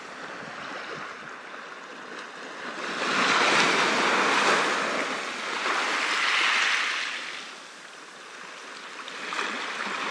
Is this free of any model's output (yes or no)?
yes